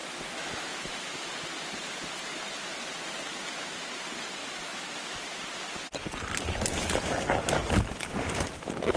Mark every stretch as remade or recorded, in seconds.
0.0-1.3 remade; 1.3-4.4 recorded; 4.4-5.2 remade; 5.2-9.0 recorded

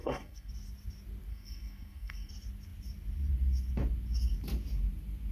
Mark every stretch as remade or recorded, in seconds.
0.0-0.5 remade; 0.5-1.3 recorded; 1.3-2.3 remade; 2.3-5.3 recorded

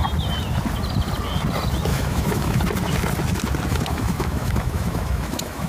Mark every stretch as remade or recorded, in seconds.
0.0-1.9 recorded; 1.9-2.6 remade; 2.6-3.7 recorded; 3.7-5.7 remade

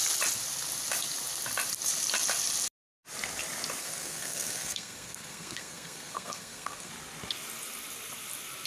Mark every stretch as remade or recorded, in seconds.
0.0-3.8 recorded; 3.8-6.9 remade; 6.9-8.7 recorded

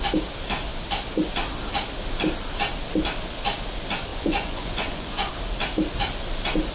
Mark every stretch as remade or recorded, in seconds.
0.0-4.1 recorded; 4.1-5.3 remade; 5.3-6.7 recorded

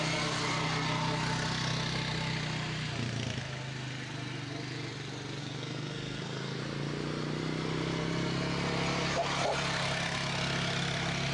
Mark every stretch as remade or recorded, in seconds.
0.0-5.4 recorded; 5.4-6.6 remade; 6.6-11.3 recorded